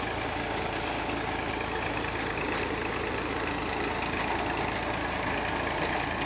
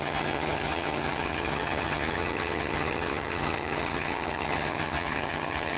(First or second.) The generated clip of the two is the second